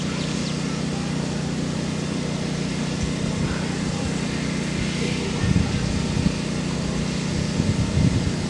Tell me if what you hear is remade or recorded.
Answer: recorded